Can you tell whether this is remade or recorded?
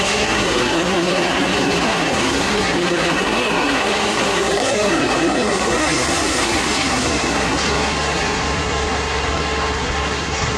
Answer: remade